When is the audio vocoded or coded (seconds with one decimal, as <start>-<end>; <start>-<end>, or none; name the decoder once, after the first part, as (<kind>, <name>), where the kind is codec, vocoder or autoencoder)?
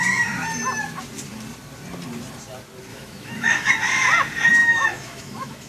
2.9-3.7 (autoencoder, DAC-VAE); 4.6-5.7